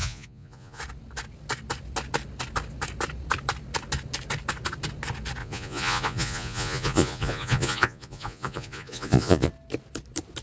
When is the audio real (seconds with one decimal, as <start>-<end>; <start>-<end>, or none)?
0.8-5.4; 9.5-10.4